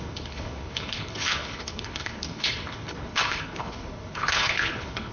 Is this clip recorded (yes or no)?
no